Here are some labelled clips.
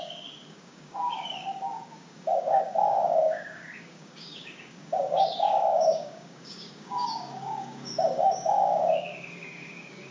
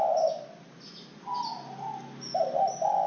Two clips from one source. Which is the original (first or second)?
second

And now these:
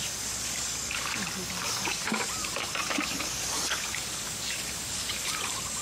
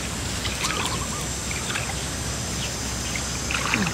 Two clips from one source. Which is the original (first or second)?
second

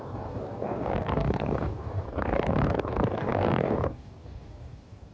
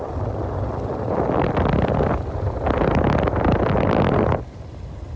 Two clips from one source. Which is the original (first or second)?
second